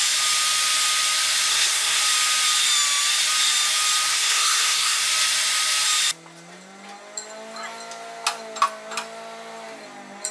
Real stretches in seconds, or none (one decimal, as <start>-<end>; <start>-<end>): 0.0-1.5; 2.0-4.1; 5.0-10.3